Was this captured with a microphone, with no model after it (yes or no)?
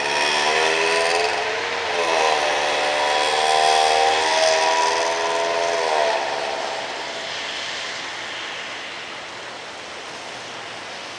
yes